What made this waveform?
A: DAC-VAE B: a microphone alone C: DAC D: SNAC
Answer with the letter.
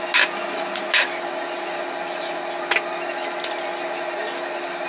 B